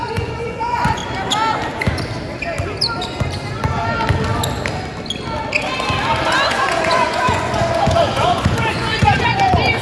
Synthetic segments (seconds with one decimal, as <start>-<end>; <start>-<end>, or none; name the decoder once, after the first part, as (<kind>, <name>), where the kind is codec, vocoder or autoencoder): 0.0-1.0 (vocoder, Vocos); 6.2-9.8

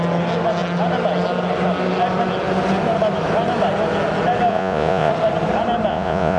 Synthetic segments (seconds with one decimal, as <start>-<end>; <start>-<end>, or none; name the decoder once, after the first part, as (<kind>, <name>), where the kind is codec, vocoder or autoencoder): 4.5-5.1 (vocoder, Vocos); 5.9-6.4

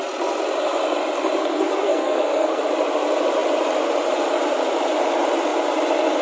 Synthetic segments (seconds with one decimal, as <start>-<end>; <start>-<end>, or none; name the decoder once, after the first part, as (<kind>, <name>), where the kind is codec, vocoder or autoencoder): 1.4-2.6 (codec, SNAC)